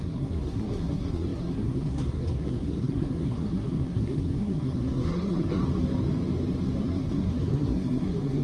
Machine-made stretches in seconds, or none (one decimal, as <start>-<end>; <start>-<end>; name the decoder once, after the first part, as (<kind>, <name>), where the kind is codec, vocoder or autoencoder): 0.0-5.6 (codec, SNAC); 6.8-8.4